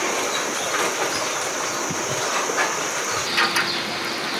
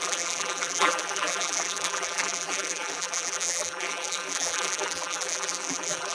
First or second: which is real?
first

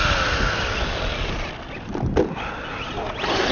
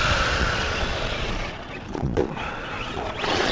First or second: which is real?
first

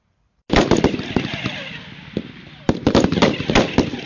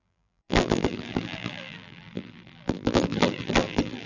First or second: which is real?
first